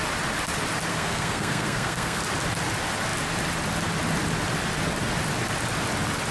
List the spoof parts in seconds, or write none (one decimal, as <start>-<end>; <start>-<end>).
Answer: 0.9-2.2